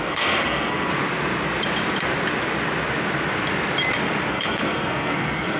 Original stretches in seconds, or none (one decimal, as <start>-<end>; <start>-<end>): 0.9-4.3